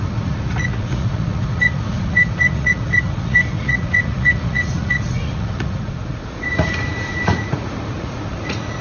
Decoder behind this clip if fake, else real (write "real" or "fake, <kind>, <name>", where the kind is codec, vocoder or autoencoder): fake, vocoder, Vocos